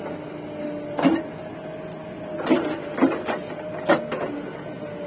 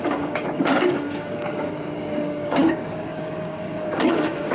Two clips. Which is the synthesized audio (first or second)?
second